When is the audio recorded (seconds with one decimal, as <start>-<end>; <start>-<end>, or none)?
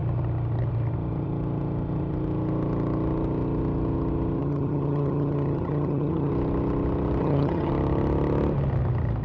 0.0-4.4; 6.3-7.2; 7.7-9.2